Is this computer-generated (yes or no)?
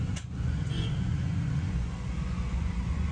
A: yes